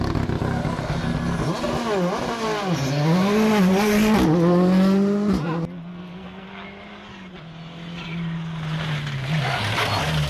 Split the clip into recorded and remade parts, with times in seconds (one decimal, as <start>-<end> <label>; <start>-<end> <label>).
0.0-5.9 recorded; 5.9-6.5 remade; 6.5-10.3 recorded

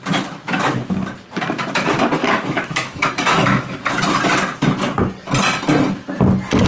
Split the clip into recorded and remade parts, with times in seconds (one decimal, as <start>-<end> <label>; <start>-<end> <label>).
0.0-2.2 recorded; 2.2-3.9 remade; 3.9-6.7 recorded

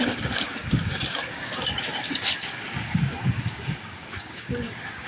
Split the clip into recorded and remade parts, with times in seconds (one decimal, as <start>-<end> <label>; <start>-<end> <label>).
0.0-5.1 remade

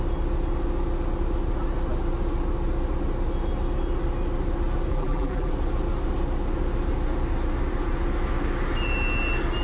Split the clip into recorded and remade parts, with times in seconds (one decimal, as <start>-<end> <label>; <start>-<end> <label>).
0.0-4.9 recorded; 4.9-5.5 remade; 5.5-9.6 recorded

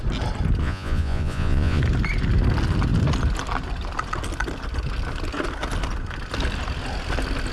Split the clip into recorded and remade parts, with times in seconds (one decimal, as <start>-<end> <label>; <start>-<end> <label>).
0.0-0.6 recorded; 0.6-1.8 remade; 1.8-7.5 recorded